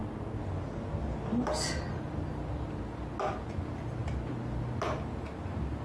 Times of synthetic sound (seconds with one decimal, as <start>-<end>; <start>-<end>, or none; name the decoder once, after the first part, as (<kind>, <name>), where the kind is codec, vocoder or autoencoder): none

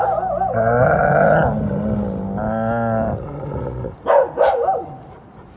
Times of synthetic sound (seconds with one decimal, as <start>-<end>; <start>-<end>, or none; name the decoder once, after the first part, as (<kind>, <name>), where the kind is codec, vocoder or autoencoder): none

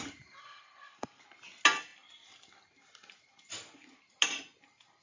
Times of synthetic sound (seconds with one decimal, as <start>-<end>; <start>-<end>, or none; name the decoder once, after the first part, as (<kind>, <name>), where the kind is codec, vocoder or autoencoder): 0.4-1.2 (codec, SNAC)

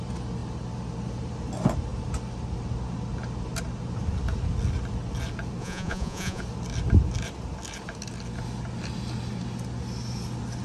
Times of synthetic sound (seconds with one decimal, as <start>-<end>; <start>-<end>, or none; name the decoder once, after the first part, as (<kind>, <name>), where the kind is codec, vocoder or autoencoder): 5.6-6.4 (vocoder, Vocos)